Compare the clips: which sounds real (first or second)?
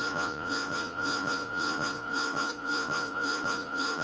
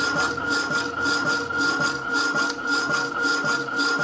second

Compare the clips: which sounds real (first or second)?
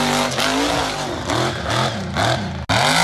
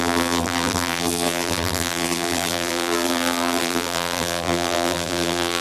first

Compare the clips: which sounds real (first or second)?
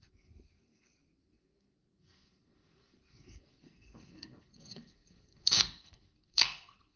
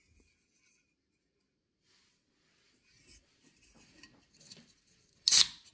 second